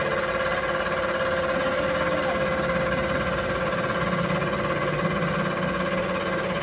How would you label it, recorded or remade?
recorded